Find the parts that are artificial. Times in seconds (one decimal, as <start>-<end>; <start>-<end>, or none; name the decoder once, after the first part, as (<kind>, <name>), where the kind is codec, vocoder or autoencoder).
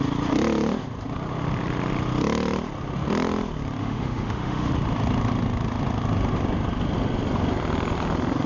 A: 3.8-4.7 (autoencoder, DAC-VAE)